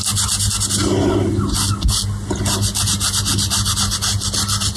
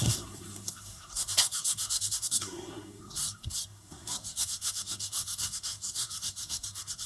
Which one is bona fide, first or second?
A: first